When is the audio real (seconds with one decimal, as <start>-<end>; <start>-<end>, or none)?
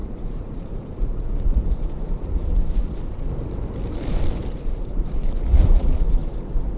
3.3-4.5